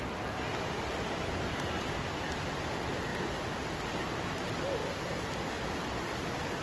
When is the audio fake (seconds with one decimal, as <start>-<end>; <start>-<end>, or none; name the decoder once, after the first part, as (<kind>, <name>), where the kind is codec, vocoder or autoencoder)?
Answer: 4.8-5.5 (vocoder, BigVGAN v2)

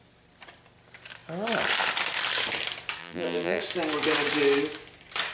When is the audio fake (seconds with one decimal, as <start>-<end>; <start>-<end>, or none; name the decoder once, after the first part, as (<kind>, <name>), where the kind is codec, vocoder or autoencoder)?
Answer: 3.0-3.6 (vocoder, BigVGAN v2)

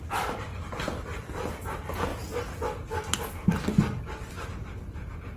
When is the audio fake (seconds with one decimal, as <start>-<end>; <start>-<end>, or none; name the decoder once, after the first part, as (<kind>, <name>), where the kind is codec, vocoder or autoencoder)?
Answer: 0.5-1.2 (vocoder, BigVGAN v2)

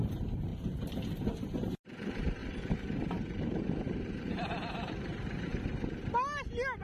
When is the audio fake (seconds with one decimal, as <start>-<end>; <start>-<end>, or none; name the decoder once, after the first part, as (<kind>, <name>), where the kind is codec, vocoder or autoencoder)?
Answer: 0.0-0.5 (vocoder, BigVGAN v2); 1.4-5.5

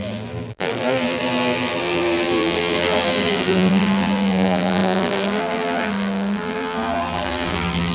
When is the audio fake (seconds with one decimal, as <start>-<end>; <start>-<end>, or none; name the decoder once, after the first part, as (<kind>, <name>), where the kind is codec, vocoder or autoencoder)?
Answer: 0.0-7.9 (vocoder, BigVGAN v2)

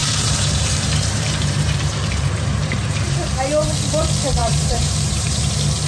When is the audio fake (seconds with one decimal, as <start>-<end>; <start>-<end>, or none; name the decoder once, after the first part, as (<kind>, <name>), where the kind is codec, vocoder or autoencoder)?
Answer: 0.0-3.5 (vocoder, BigVGAN v2); 4.4-5.5